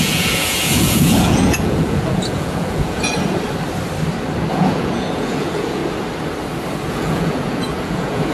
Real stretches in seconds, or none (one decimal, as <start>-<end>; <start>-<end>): 3.1-4.5; 5.8-6.9